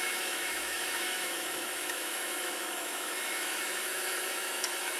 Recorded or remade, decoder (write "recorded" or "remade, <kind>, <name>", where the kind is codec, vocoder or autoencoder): remade, autoencoder, DAC-VAE